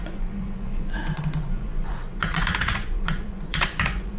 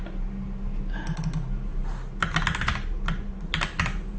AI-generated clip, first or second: first